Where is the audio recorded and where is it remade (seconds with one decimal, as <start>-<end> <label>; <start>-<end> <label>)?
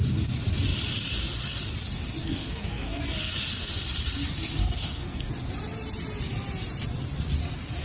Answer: 0.0-2.2 recorded; 2.2-3.0 remade; 3.0-4.6 recorded; 4.6-5.3 remade; 5.3-7.8 recorded